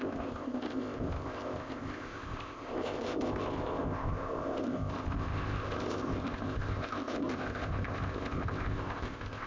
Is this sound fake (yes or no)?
yes